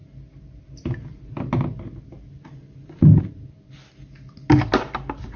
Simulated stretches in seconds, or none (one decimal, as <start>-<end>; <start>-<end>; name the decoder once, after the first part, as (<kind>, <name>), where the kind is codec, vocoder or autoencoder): none